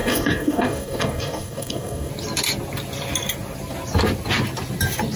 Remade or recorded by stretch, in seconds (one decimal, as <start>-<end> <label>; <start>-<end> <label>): 0.0-2.1 remade; 2.1-5.2 recorded